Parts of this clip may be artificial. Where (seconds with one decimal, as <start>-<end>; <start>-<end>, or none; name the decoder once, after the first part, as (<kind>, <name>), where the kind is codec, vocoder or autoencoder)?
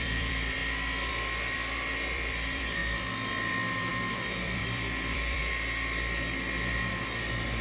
0.0-0.6 (vocoder, BigVGAN v2); 1.1-2.8; 3.3-5.4; 6.9-7.6